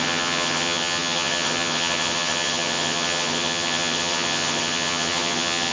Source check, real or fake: fake